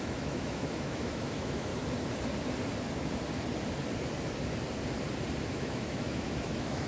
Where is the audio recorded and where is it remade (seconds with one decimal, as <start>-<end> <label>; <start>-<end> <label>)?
0.0-1.7 remade; 1.7-5.5 recorded; 5.5-6.9 remade